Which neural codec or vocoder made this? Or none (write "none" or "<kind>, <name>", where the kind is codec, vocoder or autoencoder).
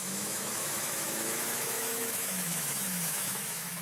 autoencoder, DAC-VAE